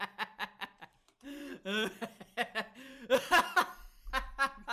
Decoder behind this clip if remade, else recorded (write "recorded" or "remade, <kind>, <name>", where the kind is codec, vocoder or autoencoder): remade, vocoder, BigVGAN v2